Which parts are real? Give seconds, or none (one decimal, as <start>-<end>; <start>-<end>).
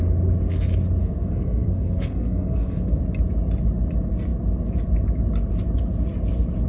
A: 0.0-1.0; 3.0-6.7